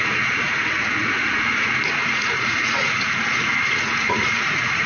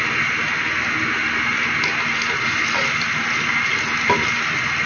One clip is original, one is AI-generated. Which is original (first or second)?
second